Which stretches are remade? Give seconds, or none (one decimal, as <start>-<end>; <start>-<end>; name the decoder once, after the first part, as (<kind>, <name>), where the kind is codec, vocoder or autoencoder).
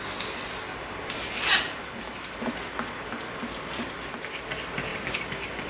none